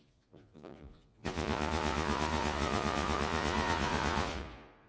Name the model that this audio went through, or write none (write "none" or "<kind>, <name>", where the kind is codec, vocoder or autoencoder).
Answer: vocoder, Vocos